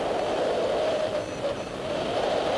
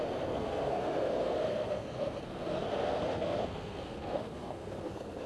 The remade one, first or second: second